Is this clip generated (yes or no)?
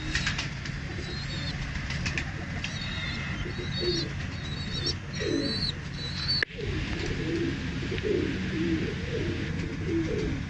no